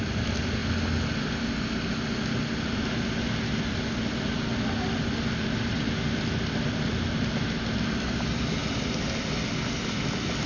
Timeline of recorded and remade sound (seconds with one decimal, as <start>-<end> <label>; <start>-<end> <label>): 0.0-10.5 recorded